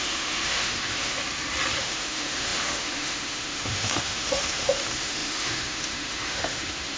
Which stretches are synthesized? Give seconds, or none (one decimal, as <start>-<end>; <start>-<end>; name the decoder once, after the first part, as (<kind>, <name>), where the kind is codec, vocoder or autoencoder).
0.0-1.2 (autoencoder, DAC-VAE); 1.8-7.0

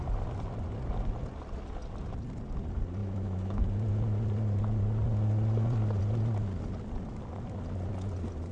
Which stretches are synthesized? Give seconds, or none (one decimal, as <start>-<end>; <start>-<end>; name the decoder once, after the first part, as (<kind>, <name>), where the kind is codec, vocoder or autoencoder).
3.0-3.6 (autoencoder, DAC-VAE)

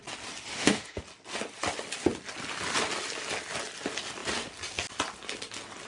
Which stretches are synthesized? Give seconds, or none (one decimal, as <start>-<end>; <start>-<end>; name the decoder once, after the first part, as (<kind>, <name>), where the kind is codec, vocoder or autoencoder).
0.5-1.0 (autoencoder, DAC-VAE)

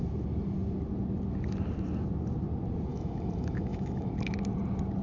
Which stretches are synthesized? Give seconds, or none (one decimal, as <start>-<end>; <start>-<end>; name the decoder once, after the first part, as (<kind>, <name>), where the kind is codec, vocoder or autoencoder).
2.9-4.1 (autoencoder, DAC-VAE)

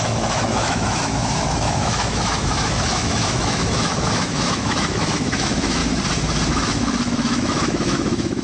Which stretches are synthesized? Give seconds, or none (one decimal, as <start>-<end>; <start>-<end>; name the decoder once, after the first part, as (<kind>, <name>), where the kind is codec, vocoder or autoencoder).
0.0-5.8 (autoencoder, DAC-VAE); 6.5-8.4

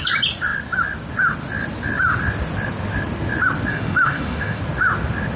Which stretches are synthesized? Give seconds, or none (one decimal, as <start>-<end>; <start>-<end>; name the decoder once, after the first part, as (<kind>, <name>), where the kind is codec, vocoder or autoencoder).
3.7-4.6 (autoencoder, DAC-VAE)

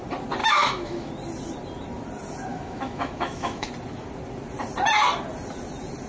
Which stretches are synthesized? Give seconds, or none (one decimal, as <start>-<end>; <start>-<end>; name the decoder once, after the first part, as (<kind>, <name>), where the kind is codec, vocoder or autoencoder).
0.4-1.1 (autoencoder, DAC-VAE); 2.5-3.7